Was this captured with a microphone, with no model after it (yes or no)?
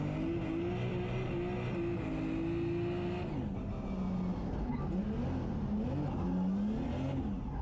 yes